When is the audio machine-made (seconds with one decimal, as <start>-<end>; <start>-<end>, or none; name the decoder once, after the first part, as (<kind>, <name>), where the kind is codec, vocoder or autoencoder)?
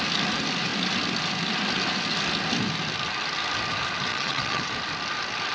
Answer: 4.1-4.7 (vocoder, WaveNeXt)